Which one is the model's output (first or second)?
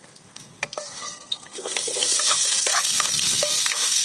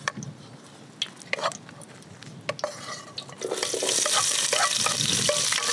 first